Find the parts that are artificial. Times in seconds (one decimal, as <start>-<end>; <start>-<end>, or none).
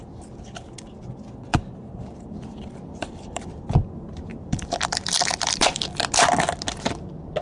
1.5-5.9